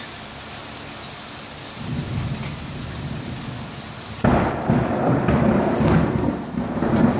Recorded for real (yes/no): yes